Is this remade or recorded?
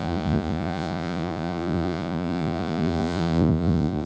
remade